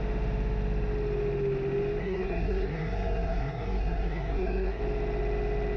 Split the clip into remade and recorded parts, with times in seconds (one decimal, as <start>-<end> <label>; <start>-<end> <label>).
0.0-2.0 recorded; 2.0-4.8 remade; 4.8-5.8 recorded